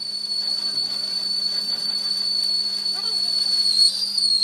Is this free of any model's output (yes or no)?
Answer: no